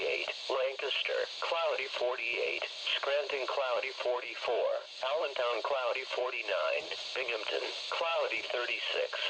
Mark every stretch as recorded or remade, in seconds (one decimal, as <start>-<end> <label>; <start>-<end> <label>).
0.0-1.1 recorded; 1.1-2.2 remade; 2.2-8.1 recorded; 8.1-9.3 remade